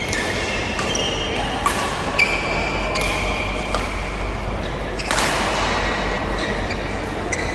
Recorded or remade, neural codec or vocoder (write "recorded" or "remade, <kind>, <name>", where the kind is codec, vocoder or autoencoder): recorded